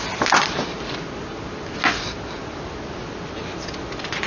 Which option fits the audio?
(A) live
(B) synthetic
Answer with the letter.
A